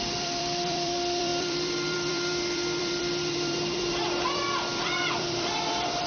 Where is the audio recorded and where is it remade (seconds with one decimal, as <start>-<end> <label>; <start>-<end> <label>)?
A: 0.0-6.1 remade